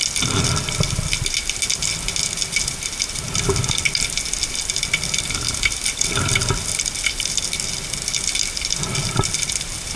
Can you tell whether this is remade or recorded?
recorded